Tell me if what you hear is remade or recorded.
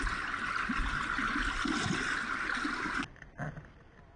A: recorded